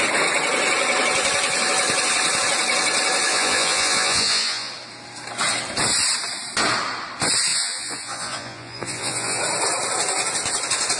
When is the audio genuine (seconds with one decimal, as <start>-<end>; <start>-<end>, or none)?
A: 0.0-3.3; 4.7-7.5; 9.4-11.0